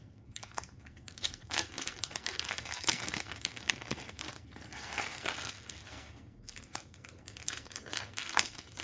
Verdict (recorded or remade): remade